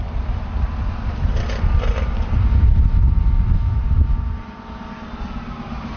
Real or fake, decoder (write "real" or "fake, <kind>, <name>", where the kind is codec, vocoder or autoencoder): real